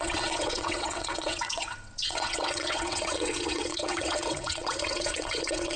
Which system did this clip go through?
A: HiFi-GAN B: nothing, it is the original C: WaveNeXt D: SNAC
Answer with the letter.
C